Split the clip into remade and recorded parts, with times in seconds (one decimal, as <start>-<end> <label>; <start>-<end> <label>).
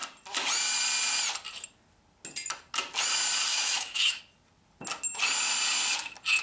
0.0-3.5 recorded; 3.5-4.2 remade; 4.2-6.4 recorded